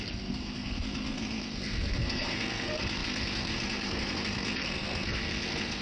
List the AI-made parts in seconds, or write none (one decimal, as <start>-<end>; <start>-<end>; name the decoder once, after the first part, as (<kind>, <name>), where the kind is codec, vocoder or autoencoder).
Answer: 0.0-5.8 (codec, SNAC)